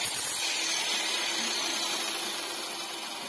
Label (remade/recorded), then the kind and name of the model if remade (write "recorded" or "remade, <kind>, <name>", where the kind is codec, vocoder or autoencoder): recorded